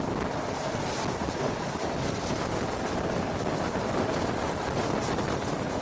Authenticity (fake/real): real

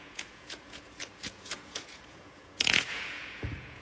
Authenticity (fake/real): fake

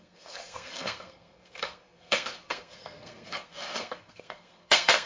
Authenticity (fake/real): fake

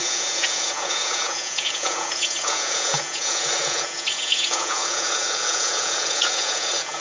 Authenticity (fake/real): fake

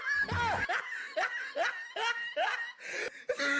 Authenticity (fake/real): real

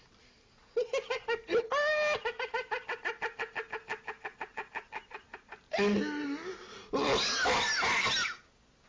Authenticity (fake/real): real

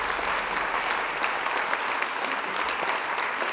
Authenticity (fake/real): real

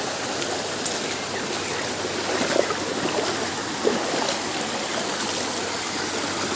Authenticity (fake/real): real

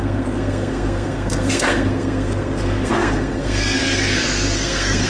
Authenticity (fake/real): fake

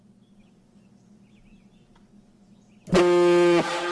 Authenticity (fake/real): real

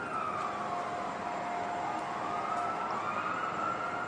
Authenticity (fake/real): real